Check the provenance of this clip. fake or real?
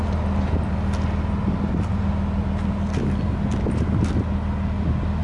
real